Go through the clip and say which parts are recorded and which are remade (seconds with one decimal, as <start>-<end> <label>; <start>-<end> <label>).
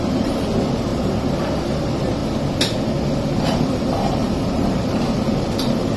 0.0-0.9 remade; 0.9-1.8 recorded; 1.8-2.2 remade; 2.2-3.4 recorded; 3.4-6.0 remade